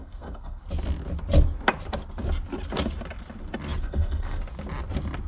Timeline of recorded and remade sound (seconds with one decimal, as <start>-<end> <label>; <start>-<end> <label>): 0.0-0.6 remade; 0.6-3.8 recorded; 3.8-4.4 remade; 4.4-5.3 recorded